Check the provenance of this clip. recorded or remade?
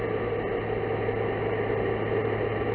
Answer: recorded